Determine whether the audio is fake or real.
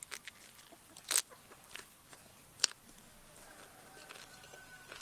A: real